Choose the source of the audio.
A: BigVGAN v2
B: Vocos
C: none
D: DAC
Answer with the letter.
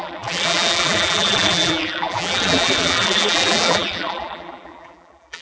A